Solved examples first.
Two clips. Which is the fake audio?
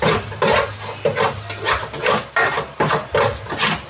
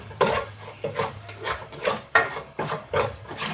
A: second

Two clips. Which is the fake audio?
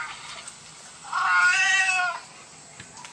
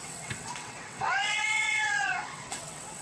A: second